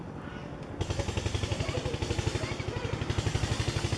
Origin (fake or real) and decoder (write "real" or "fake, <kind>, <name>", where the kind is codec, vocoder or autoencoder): real